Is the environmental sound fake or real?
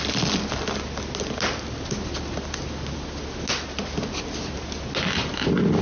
real